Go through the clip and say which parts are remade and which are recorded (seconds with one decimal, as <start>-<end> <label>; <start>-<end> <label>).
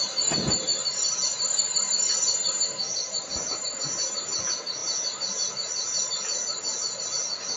0.0-7.6 recorded